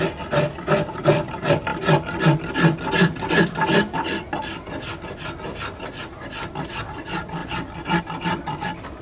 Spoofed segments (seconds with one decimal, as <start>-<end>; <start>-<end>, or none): none